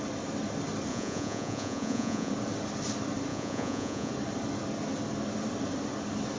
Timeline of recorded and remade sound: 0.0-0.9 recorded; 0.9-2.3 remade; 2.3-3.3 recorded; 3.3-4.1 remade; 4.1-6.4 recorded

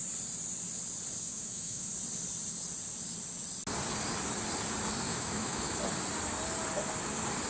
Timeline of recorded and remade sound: 0.0-1.2 recorded; 1.2-1.9 remade; 1.9-5.1 recorded; 5.1-5.8 remade; 5.8-7.5 recorded

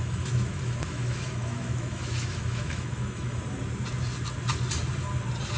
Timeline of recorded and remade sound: 0.0-3.4 remade; 3.4-5.6 recorded